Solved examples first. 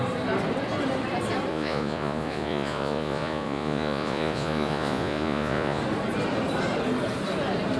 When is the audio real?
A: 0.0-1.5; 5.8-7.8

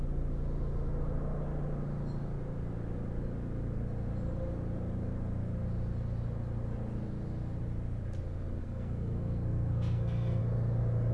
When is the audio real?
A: 0.0-8.6; 10.4-11.1

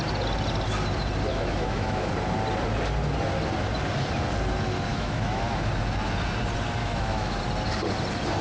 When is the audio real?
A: 0.0-1.3; 2.1-4.9; 5.7-6.8; 7.4-8.4

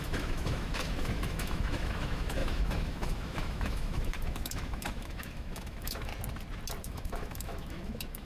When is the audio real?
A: 6.1-6.8

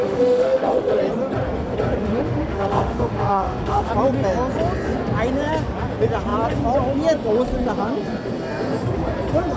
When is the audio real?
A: 1.0-2.0; 3.9-9.6